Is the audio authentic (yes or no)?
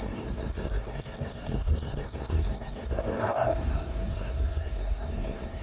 no